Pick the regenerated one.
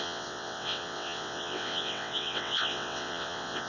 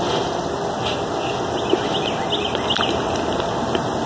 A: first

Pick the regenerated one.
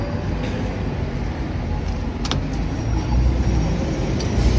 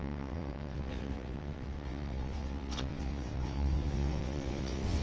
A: second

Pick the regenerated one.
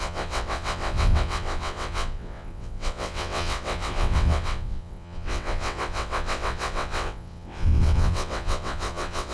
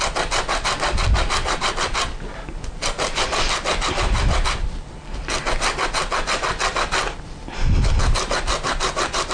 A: first